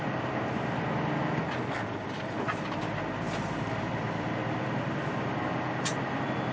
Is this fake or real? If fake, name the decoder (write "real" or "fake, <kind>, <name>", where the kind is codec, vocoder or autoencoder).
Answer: real